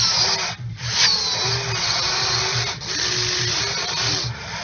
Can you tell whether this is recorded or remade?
recorded